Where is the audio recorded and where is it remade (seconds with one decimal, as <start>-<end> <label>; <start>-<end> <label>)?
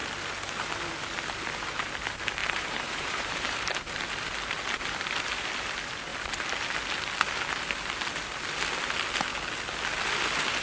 0.0-2.4 recorded; 2.4-3.6 remade; 3.6-10.6 recorded